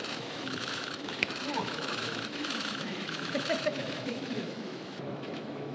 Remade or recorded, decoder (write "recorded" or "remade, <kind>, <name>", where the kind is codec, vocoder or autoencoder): remade, autoencoder, DAC-VAE